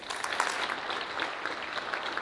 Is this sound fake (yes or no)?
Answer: yes